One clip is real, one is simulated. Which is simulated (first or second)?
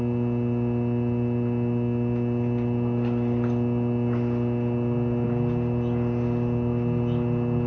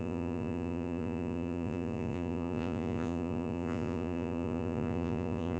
second